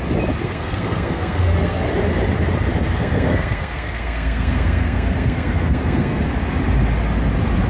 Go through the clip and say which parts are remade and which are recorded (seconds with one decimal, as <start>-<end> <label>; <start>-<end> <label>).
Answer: 0.0-0.4 recorded; 0.4-1.9 remade; 1.9-2.7 recorded; 2.7-6.2 remade; 6.2-7.7 recorded